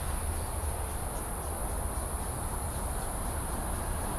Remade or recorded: recorded